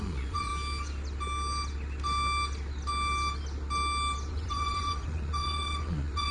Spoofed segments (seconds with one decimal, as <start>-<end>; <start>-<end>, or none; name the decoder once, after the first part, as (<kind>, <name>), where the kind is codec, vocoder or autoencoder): 0.0-0.5 (vocoder, Vocos); 4.3-6.3